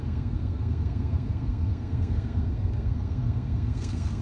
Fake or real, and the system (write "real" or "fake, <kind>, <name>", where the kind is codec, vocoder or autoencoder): fake, codec, SNAC